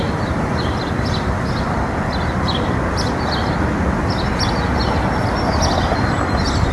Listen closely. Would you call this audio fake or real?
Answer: real